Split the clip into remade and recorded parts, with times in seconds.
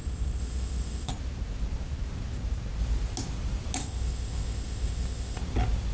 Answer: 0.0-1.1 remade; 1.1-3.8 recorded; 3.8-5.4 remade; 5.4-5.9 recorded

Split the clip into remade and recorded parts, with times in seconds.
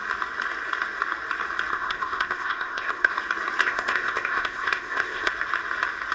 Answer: 0.0-1.7 recorded; 1.7-3.1 remade; 3.1-3.6 recorded; 3.6-5.3 remade; 5.3-6.1 recorded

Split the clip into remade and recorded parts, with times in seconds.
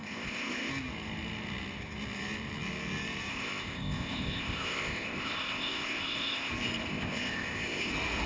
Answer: 0.0-0.7 remade; 0.7-3.3 recorded; 3.3-6.5 remade; 6.5-6.9 recorded; 6.9-7.9 remade; 7.9-8.3 recorded